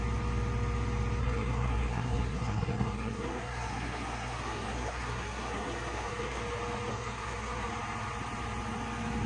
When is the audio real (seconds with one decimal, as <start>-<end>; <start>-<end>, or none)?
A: 0.0-1.2; 6.4-6.9; 7.7-9.3